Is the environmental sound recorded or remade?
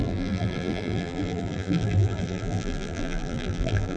remade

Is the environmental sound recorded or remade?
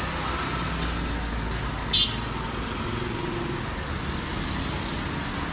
recorded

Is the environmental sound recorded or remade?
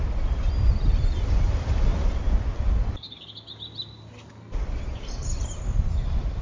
recorded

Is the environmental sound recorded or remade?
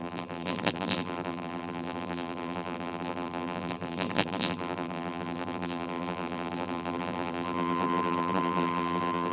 remade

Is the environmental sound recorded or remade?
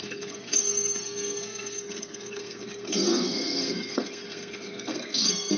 remade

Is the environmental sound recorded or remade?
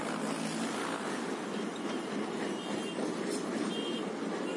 recorded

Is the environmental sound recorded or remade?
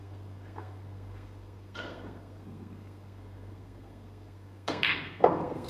remade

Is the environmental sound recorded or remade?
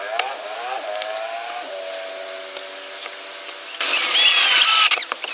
recorded